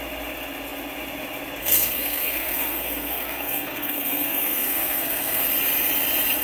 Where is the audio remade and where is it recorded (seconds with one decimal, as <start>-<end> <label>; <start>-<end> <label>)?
0.0-1.6 recorded; 1.6-5.4 remade; 5.4-6.4 recorded